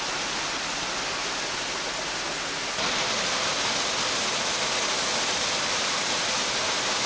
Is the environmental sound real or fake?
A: real